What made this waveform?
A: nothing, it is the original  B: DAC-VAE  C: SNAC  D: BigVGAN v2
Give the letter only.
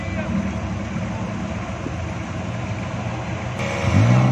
A